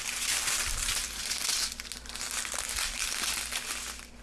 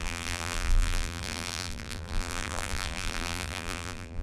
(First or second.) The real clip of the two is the first